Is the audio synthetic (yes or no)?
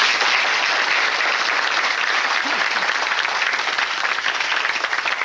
no